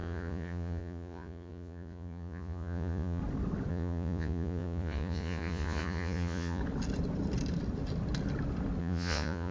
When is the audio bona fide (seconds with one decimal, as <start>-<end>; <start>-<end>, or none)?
3.2-3.7; 6.6-8.8